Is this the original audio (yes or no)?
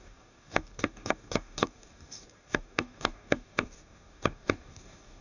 no